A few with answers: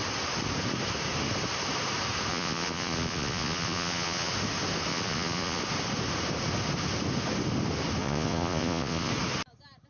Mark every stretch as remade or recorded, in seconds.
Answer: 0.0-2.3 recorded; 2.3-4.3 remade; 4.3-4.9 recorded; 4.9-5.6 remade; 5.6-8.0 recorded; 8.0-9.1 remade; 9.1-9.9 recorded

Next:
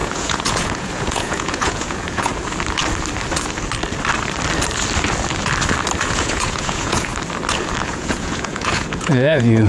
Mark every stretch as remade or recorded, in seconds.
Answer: 0.0-2.3 remade; 2.3-6.0 recorded; 6.0-7.1 remade; 7.1-7.8 recorded; 7.8-9.7 remade